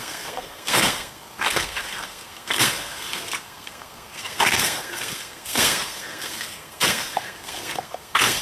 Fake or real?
fake